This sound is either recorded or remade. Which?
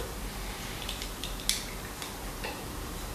recorded